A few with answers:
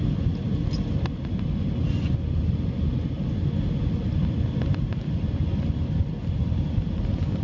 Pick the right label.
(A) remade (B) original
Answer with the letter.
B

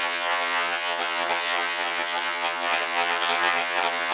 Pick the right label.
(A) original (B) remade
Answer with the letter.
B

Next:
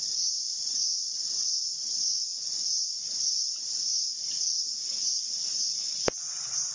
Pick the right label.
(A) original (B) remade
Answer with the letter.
A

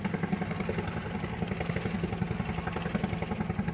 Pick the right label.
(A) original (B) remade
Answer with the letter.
A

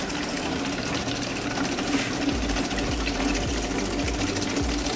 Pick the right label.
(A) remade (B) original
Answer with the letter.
B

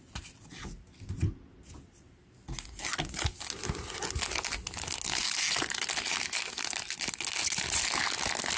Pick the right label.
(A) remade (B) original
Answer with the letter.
B